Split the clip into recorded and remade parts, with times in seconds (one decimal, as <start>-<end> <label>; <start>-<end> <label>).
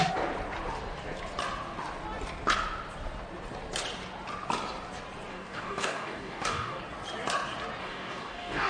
0.0-5.3 recorded; 5.3-6.8 remade; 6.8-7.8 recorded; 7.8-8.7 remade